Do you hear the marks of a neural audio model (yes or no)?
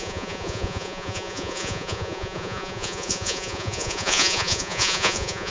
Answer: yes